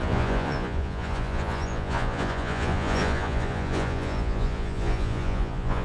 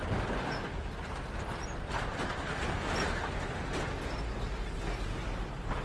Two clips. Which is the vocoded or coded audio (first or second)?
first